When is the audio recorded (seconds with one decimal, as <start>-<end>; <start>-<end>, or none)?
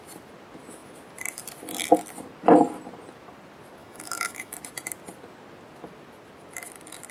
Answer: 0.0-3.8; 4.6-7.1